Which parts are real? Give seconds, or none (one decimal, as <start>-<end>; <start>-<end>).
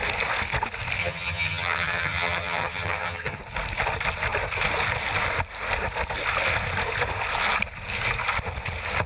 0.0-1.0; 3.4-9.1